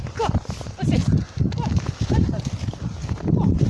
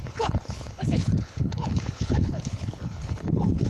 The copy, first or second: second